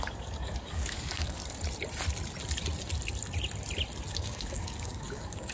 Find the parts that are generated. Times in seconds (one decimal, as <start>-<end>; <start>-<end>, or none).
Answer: 0.0-1.4; 4.1-5.5